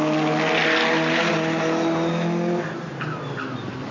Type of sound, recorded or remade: recorded